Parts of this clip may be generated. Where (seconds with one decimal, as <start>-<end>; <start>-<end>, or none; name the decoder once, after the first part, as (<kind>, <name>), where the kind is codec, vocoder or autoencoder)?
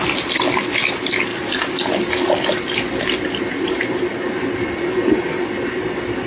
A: none